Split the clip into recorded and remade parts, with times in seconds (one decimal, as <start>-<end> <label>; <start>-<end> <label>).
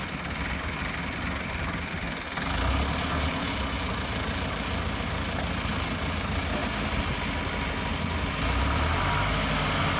0.0-10.0 recorded